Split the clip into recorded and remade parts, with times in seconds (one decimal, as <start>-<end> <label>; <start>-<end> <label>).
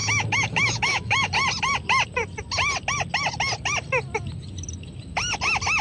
0.0-1.3 remade; 1.3-5.8 recorded